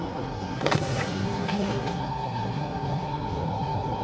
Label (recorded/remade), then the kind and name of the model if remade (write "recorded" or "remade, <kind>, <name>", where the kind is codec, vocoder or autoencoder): remade, codec, SNAC